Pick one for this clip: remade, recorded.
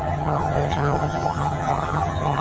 remade